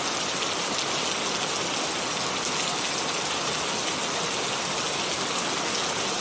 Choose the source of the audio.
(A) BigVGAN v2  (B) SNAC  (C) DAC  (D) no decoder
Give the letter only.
D